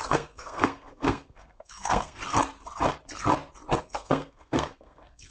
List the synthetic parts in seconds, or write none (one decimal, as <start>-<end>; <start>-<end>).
0.0-2.2; 3.8-5.3

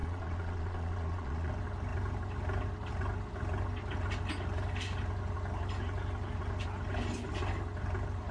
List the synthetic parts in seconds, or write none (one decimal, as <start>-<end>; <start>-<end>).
0.0-1.5

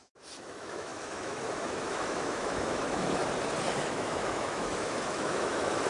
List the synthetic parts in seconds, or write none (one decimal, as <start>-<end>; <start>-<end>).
0.0-3.2; 3.8-5.9

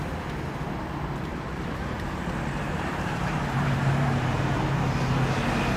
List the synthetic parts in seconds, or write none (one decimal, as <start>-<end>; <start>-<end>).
1.3-4.4

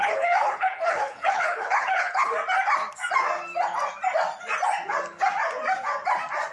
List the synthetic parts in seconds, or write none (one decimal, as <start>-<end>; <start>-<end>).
0.0-2.3

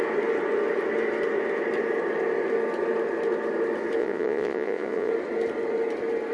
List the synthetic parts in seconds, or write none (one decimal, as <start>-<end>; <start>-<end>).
4.0-5.1

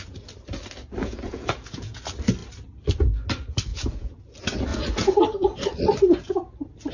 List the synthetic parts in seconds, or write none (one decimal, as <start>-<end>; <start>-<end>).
1.0-2.0; 3.7-4.2; 4.7-5.2